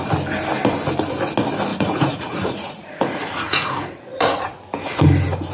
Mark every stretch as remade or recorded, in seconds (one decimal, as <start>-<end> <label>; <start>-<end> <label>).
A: 0.0-1.7 recorded; 1.7-4.6 remade; 4.6-5.5 recorded